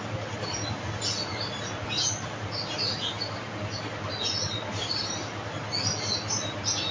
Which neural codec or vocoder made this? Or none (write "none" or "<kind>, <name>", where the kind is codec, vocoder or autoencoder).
none